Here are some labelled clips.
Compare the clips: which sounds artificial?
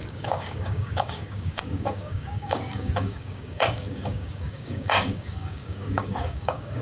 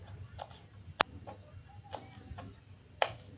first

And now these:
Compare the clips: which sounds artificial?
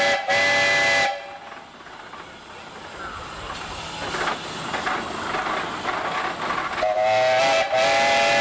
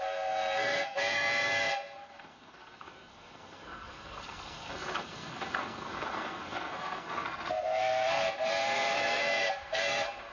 second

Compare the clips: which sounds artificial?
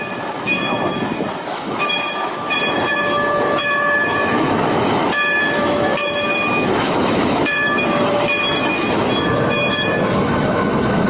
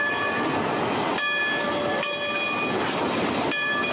first